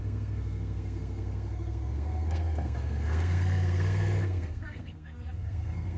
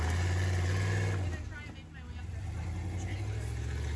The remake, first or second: first